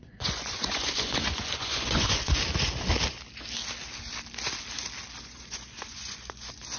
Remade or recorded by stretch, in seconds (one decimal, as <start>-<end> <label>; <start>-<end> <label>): 0.0-2.4 remade; 2.4-5.2 recorded; 5.2-6.8 remade